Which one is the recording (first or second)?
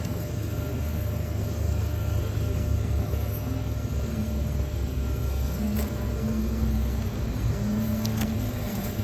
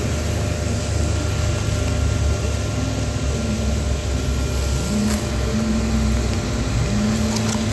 second